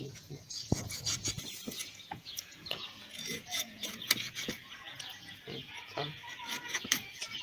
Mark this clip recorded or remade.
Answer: remade